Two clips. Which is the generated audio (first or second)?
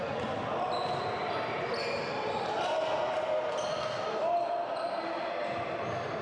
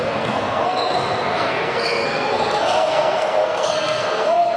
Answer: second